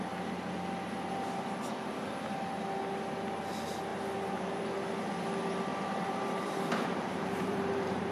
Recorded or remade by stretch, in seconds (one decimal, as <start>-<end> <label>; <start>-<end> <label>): 0.0-3.9 recorded; 3.9-4.6 remade; 4.6-5.7 recorded; 5.7-6.5 remade; 6.5-7.2 recorded; 7.2-8.1 remade